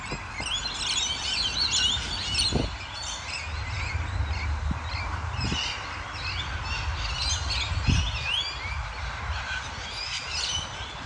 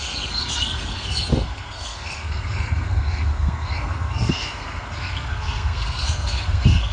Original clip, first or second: first